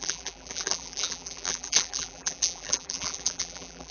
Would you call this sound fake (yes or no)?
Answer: yes